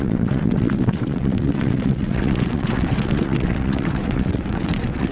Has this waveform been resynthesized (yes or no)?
yes